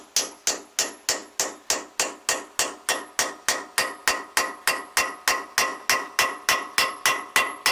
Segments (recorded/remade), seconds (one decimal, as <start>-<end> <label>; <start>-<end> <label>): 0.0-7.7 recorded